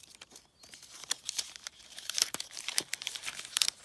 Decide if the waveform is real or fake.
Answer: fake